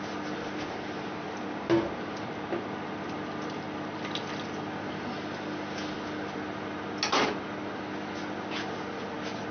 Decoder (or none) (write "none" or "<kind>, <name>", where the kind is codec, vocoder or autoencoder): none